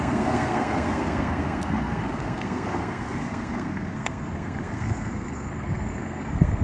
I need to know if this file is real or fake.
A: fake